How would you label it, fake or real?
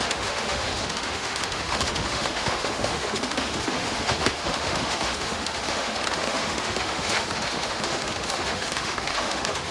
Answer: fake